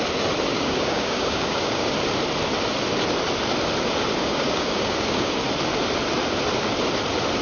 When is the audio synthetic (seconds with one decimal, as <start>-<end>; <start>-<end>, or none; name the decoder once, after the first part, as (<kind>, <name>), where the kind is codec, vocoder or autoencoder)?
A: 0.5-1.9 (codec, DAC); 4.2-5.4